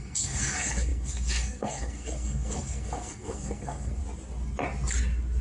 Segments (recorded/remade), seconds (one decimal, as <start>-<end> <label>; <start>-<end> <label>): 0.0-4.0 remade; 4.0-5.4 recorded